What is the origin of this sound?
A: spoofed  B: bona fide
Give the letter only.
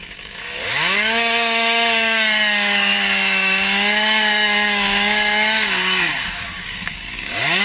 A